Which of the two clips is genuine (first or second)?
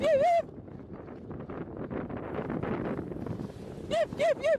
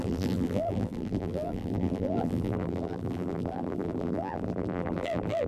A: first